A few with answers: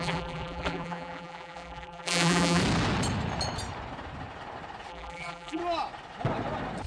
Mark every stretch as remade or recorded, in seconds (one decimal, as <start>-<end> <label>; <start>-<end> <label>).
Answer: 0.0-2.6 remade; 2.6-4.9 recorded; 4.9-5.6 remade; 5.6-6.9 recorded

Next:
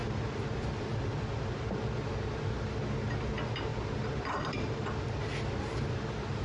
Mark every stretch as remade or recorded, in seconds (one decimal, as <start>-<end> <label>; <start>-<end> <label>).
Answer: 0.0-1.2 remade; 1.2-3.7 recorded; 3.7-6.4 remade

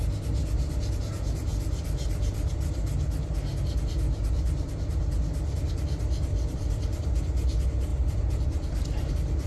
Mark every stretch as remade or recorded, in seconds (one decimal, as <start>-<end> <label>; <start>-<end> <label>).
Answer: 0.0-6.3 recorded; 6.3-7.2 remade; 7.2-9.5 recorded